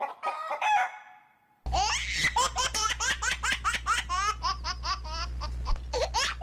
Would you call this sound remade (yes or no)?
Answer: no